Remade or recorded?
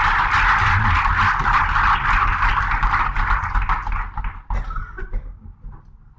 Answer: recorded